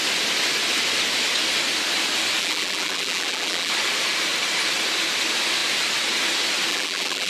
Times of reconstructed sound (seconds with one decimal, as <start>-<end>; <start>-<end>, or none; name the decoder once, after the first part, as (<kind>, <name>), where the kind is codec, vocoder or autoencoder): 2.4-3.7 (vocoder, BigVGAN v2); 6.7-7.3